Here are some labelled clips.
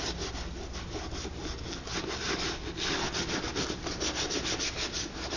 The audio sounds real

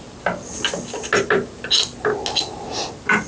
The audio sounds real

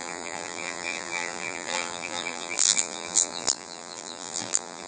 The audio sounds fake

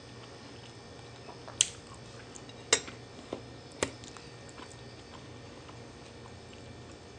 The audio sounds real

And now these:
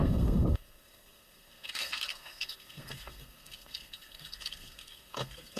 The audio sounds fake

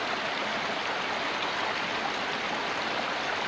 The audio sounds real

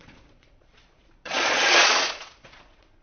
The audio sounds fake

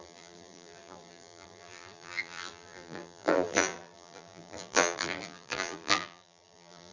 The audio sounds fake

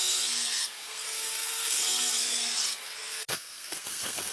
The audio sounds fake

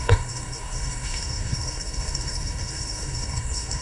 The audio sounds fake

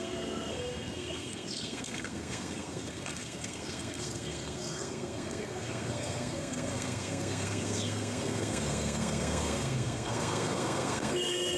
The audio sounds fake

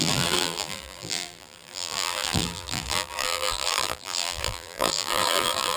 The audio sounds fake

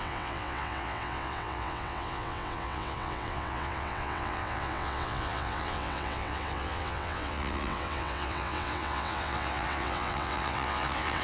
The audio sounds fake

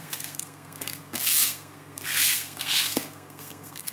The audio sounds fake